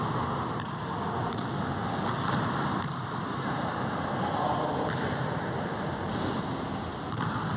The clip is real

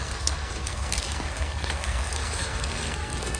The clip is fake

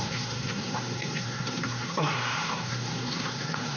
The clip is fake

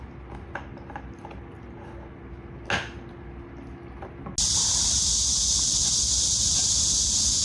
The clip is real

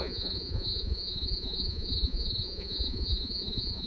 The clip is fake